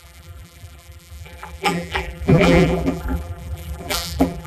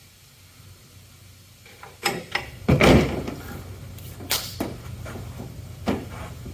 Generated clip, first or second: first